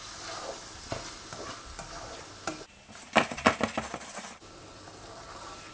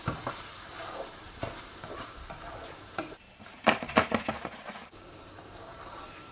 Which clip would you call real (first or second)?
first